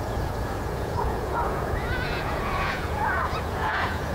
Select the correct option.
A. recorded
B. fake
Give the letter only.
B